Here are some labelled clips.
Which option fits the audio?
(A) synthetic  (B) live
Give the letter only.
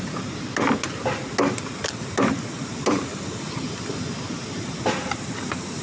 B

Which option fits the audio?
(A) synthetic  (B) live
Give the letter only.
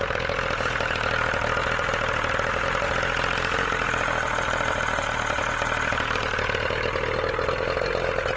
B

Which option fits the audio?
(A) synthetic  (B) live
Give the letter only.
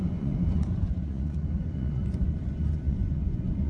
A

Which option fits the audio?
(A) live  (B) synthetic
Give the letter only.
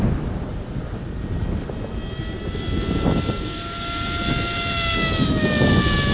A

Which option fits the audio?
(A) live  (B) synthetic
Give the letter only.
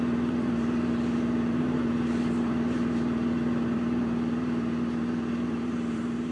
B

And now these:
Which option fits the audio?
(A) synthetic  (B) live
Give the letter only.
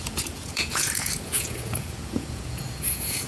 A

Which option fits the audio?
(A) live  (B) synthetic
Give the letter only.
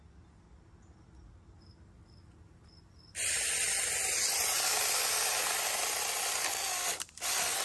A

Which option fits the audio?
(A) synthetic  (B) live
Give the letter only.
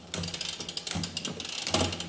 B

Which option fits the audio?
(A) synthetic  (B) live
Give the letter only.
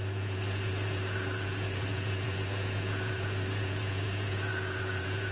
A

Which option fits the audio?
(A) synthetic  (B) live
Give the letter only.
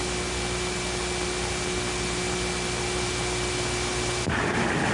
B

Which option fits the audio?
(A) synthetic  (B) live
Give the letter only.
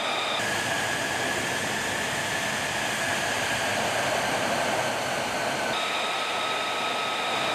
B